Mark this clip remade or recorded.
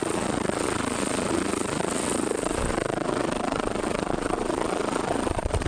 remade